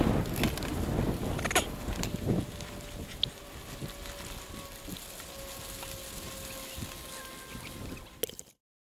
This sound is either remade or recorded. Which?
recorded